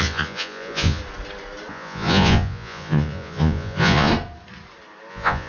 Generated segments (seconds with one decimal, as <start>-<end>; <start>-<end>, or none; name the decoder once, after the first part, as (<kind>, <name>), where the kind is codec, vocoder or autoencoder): 0.0-1.0 (vocoder, Vocos); 1.7-4.1; 5.1-5.5